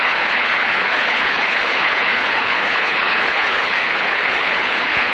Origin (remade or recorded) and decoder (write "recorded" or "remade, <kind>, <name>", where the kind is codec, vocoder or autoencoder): remade, codec, HILCodec